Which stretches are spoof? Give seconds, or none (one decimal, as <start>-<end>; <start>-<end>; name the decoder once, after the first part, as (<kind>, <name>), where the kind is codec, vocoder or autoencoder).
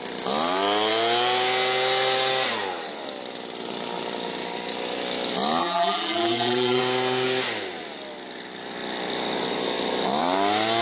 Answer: 5.6-6.8 (vocoder, BigVGAN v2)